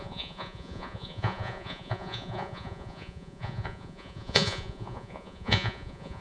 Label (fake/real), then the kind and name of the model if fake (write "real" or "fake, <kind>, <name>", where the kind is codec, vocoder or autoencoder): fake, vocoder, Vocos